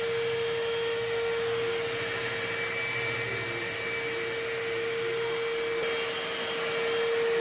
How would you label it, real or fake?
real